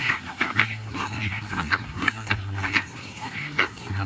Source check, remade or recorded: remade